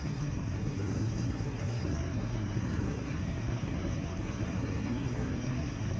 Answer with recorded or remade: remade